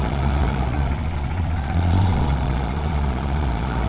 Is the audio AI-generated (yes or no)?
yes